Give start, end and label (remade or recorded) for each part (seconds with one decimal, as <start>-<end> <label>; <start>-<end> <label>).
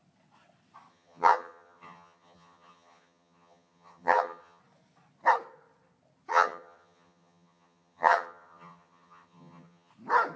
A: 0.0-0.9 recorded; 0.9-4.6 remade; 4.6-6.3 recorded; 6.3-9.9 remade; 9.9-10.4 recorded